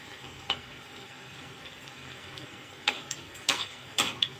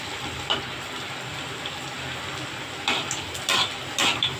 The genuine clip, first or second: second